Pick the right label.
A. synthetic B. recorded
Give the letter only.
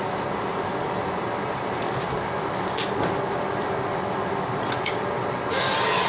B